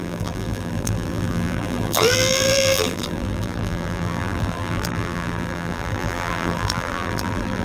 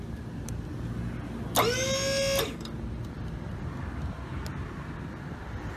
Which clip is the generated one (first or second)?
first